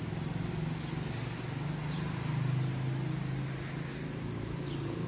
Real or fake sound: real